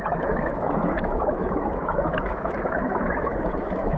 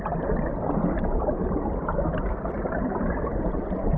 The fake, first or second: first